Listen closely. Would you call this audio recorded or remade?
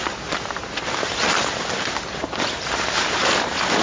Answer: recorded